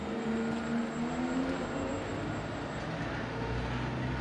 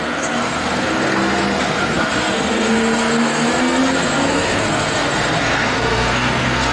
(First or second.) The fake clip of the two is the second